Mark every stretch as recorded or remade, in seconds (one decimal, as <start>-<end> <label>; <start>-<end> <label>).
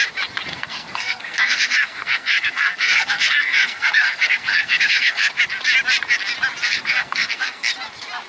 0.0-0.5 recorded; 0.5-5.3 remade; 5.3-6.6 recorded; 6.6-7.7 remade; 7.7-8.3 recorded